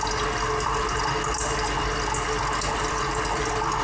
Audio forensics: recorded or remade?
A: recorded